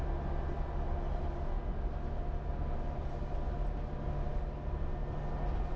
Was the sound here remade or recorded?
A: recorded